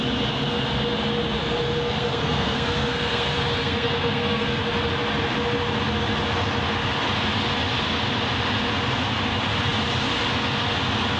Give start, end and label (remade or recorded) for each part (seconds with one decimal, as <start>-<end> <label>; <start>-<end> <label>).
0.0-1.4 recorded; 1.4-4.6 remade; 4.6-11.2 recorded